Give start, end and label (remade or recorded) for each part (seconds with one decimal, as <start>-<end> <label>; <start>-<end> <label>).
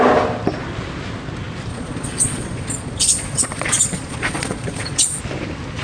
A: 0.0-1.7 recorded; 1.7-5.2 remade; 5.2-5.8 recorded